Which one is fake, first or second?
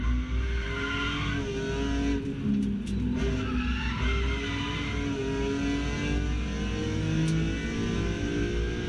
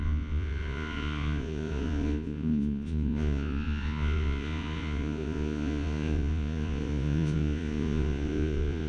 second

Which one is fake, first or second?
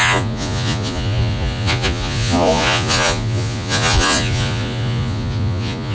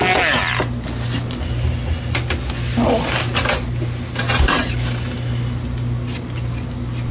first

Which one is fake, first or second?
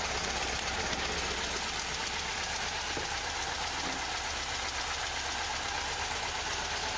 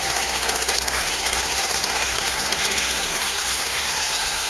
second